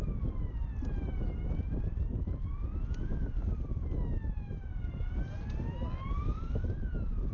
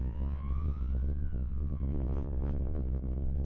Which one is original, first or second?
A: first